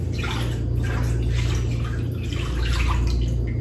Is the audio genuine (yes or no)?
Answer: yes